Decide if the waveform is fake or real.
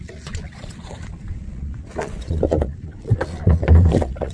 fake